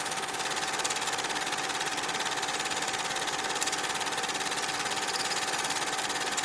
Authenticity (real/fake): real